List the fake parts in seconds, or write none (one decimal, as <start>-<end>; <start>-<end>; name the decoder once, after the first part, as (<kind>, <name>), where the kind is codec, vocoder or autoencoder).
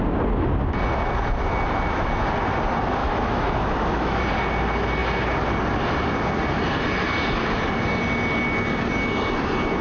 3.0-4.2 (autoencoder, DAC-VAE)